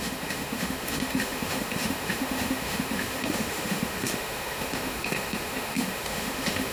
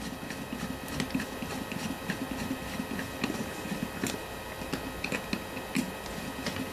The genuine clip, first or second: second